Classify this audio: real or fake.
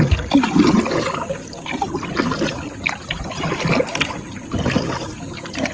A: real